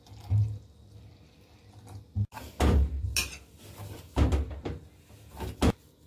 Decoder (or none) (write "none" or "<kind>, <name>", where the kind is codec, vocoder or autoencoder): none